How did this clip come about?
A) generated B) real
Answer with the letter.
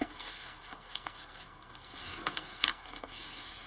A